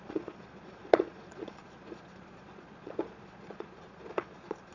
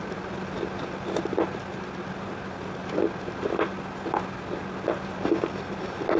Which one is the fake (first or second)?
first